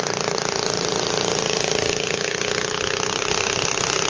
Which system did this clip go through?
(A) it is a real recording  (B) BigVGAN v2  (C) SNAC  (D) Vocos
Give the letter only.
A